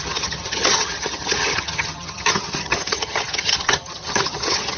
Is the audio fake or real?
fake